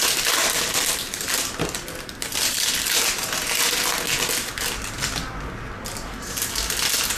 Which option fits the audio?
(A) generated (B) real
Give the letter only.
B